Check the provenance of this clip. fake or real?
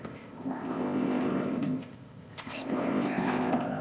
fake